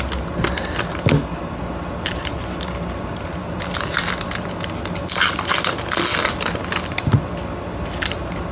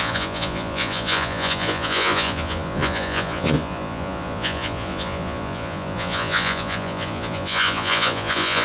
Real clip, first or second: first